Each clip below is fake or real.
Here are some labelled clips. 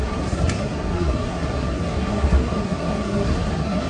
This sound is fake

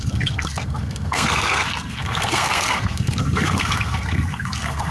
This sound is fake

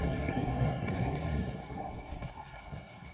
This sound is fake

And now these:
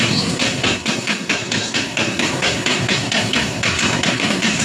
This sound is fake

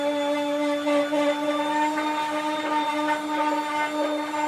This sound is real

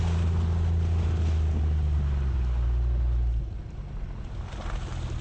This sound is real